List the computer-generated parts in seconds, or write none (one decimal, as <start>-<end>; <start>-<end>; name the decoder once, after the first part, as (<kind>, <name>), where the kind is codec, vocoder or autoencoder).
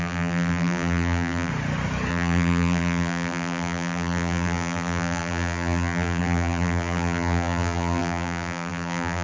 0.0-1.5 (vocoder, BigVGAN v2); 2.1-9.2